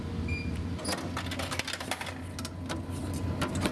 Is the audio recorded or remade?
recorded